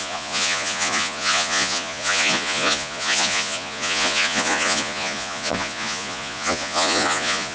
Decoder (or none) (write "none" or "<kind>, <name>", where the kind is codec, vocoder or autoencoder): vocoder, Vocos